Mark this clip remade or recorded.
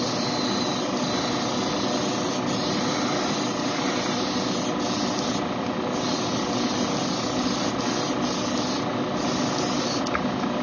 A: recorded